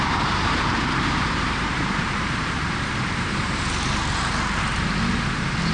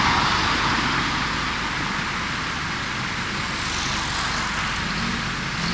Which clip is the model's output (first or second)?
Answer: first